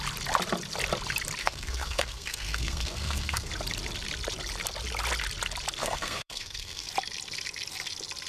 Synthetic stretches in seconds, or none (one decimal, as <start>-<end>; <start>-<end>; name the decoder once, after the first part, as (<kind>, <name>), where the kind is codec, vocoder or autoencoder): 1.4-3.5 (codec, SNAC); 5.8-6.9